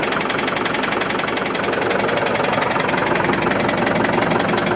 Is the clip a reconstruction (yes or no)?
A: no